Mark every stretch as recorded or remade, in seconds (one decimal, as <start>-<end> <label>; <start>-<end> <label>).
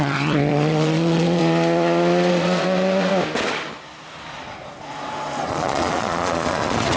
0.0-1.4 remade; 1.4-2.3 recorded; 2.3-3.1 remade; 3.1-5.5 recorded; 5.5-7.0 remade